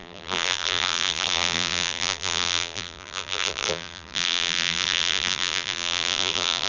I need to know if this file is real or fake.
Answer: fake